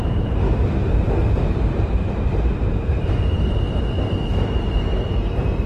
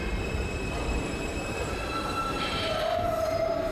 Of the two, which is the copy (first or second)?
second